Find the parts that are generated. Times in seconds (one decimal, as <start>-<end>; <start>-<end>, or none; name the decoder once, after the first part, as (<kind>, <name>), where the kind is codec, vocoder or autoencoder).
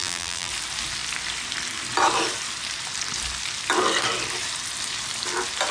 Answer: 0.0-0.5 (vocoder, BigVGAN v2)